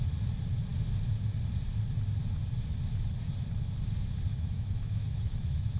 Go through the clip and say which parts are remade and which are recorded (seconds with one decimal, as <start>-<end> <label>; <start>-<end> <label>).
0.0-4.3 recorded; 4.3-5.8 remade